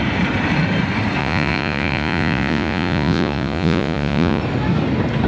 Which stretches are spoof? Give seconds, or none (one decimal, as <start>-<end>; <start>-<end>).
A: 1.2-4.4